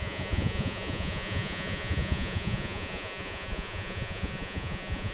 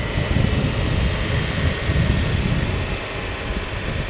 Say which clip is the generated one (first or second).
first